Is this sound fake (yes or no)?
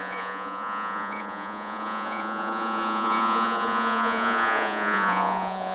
yes